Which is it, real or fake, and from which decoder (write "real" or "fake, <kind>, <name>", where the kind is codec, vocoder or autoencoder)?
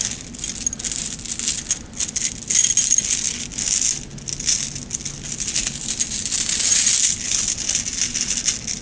real